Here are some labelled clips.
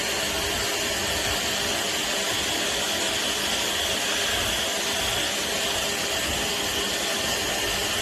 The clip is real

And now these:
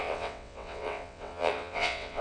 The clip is fake